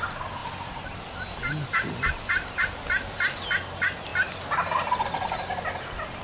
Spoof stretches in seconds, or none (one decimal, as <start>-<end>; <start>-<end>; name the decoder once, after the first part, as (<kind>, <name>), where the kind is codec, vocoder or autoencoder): none